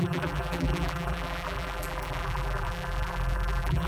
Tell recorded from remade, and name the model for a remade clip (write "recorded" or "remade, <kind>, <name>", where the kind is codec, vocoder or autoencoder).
remade, vocoder, BigVGAN v2